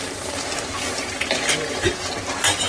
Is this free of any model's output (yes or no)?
yes